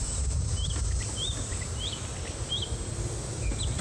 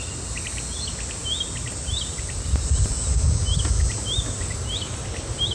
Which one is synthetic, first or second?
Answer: first